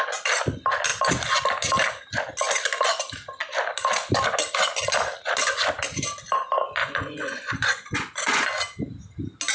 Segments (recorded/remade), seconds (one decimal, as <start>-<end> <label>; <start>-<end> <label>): 0.0-6.8 recorded; 6.8-8.4 remade; 8.4-9.5 recorded